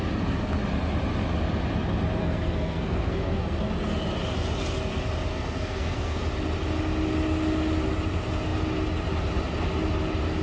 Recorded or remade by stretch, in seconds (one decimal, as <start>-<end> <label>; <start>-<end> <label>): 0.0-2.2 recorded; 2.2-3.6 remade; 3.6-5.3 recorded; 5.3-6.2 remade; 6.2-10.4 recorded